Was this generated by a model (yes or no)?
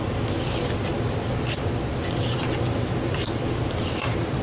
no